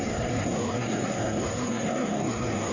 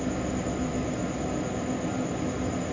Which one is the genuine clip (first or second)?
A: second